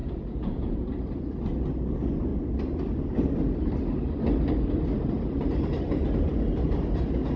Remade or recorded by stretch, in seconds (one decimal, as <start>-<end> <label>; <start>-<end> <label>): 0.0-0.8 remade; 0.8-7.4 recorded